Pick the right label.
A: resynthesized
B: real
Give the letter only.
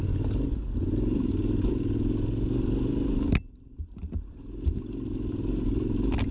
B